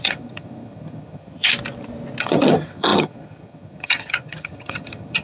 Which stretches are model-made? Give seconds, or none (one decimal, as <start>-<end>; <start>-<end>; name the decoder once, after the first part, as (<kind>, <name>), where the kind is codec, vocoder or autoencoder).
0.0-1.5 (vocoder, HiFi-GAN); 2.2-5.2